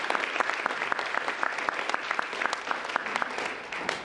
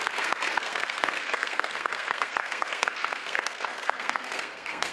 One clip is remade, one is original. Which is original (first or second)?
first